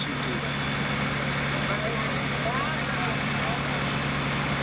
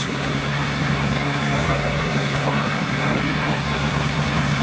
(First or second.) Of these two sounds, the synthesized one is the second